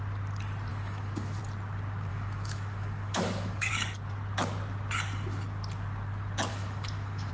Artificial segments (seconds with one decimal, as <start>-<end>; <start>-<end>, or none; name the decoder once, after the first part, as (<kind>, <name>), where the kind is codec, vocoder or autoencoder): 0.7-1.4 (autoencoder, DAC-VAE); 2.1-3.7; 6.5-7.3